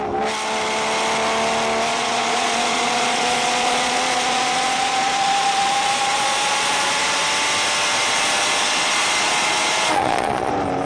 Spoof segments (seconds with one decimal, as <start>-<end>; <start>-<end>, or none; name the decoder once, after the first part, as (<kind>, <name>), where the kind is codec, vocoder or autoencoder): 1.9-7.2 (vocoder, Vocos); 7.9-10.5